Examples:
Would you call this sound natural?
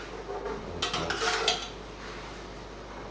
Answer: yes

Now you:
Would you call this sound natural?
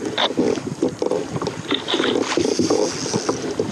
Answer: yes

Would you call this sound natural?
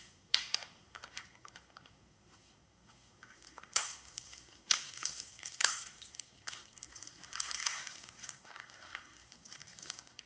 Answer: no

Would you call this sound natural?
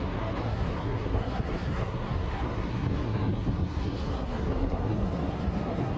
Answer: no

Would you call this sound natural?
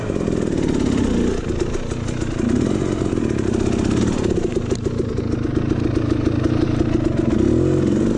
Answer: yes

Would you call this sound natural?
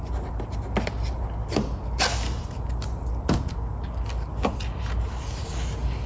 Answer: yes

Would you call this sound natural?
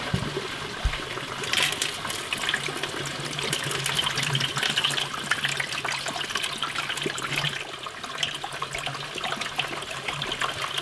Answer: yes